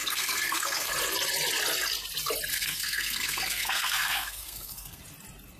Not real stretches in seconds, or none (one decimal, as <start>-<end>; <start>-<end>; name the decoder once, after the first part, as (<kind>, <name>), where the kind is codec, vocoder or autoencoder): 0.0-0.9 (codec, SNAC); 2.5-5.0